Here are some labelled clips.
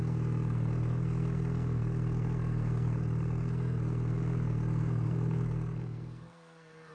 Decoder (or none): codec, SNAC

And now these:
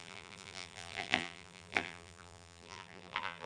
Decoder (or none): vocoder, BigVGAN v2